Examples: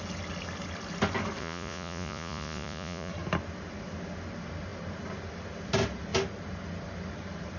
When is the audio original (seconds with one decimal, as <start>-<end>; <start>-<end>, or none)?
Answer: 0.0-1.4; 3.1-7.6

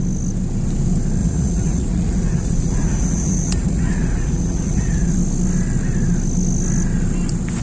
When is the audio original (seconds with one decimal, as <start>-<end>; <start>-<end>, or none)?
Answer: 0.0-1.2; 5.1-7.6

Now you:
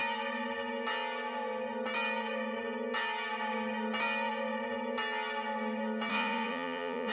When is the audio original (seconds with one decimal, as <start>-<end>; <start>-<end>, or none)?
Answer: 0.0-6.1